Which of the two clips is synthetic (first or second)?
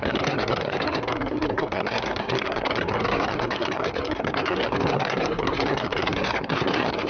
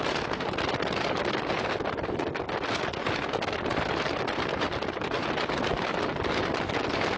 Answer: first